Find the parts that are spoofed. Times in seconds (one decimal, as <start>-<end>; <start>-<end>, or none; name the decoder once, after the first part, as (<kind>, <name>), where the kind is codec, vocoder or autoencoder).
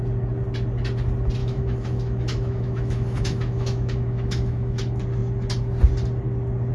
1.4-4.8 (autoencoder, DAC-VAE)